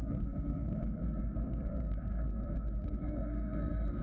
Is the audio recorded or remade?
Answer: remade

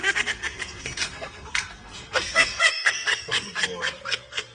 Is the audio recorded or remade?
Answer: remade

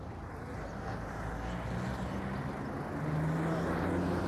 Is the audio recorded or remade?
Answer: recorded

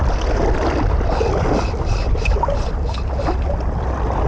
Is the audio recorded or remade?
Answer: recorded